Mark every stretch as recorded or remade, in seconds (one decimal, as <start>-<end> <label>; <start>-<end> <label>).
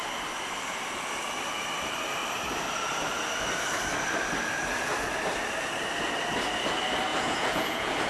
0.0-7.1 recorded; 7.1-8.1 remade